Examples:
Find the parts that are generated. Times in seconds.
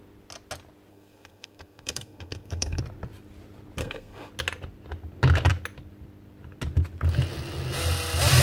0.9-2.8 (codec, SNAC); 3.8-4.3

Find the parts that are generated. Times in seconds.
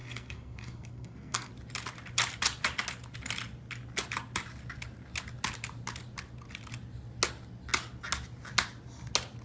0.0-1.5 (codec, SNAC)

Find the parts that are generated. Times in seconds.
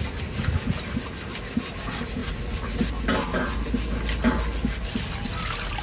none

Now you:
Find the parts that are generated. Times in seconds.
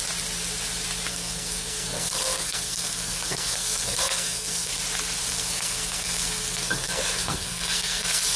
1.1-4.7 (codec, SNAC); 5.2-8.4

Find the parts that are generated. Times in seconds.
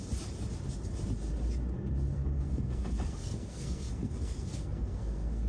2.1-5.5 (codec, SNAC)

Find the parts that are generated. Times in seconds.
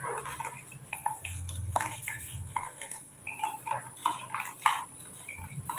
0.9-3.2 (codec, SNAC)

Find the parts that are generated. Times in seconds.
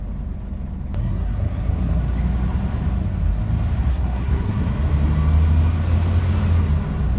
1.0-2.0 (codec, SNAC); 3.9-4.7